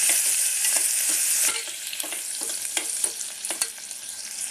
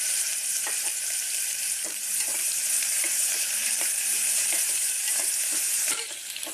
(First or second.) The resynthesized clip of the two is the second